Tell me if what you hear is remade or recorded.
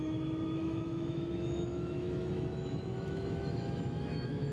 remade